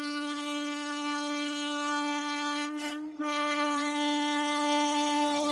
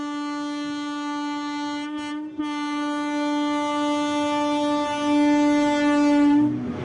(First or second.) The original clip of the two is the second